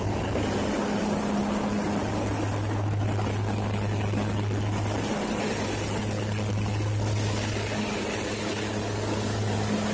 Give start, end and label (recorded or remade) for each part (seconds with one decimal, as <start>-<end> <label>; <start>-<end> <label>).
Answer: 0.0-9.9 recorded